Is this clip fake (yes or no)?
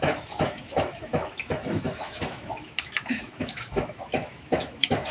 yes